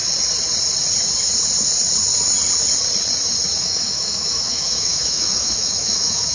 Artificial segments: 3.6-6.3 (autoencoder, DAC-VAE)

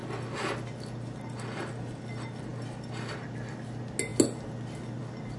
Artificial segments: none